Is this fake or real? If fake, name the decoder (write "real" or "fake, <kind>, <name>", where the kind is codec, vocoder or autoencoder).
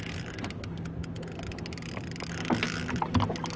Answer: real